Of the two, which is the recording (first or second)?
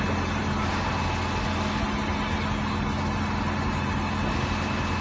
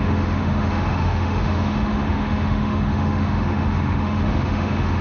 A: first